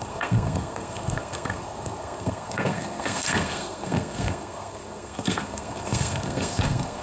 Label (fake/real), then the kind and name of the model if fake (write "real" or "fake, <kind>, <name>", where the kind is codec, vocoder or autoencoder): fake, codec, SNAC